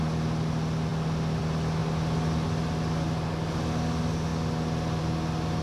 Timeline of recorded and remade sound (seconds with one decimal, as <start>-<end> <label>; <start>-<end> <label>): 0.0-5.6 recorded